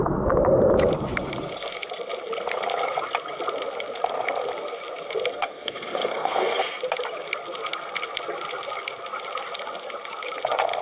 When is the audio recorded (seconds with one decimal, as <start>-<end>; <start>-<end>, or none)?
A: 0.0-5.3; 6.6-10.8